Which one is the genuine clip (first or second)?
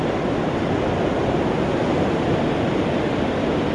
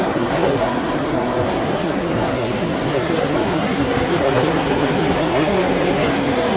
first